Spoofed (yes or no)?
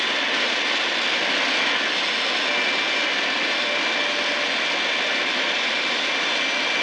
no